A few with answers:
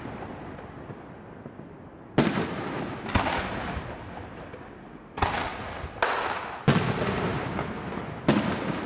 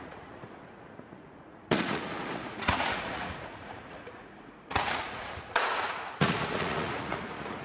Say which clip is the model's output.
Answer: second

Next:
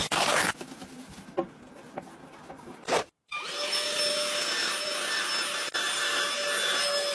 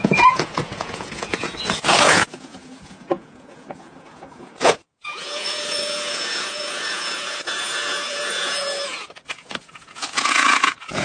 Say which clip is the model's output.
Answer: second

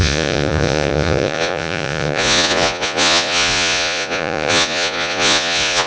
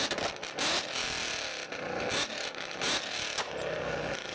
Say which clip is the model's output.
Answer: first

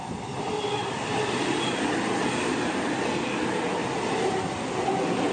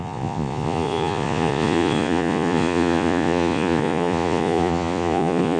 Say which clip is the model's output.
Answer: second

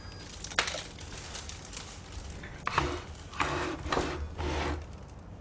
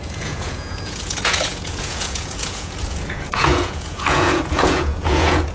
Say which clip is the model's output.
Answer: second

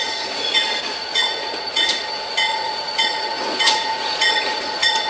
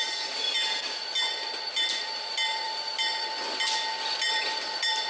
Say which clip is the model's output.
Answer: first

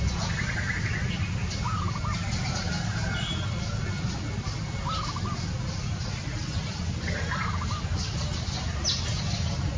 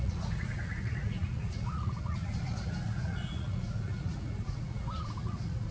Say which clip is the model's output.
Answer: second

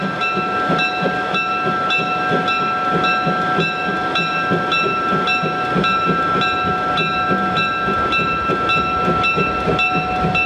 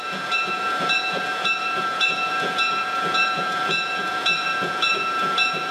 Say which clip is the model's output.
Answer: second